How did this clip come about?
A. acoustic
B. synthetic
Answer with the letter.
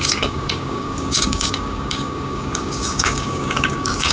B